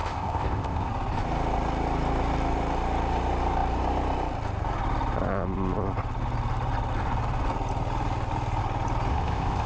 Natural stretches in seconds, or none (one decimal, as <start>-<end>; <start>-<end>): 0.9-9.1